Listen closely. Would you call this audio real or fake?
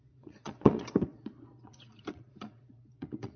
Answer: fake